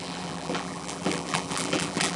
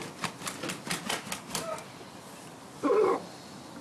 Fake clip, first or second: first